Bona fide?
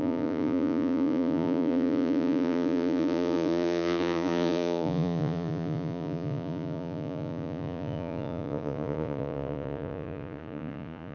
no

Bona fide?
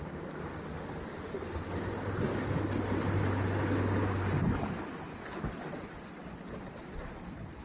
yes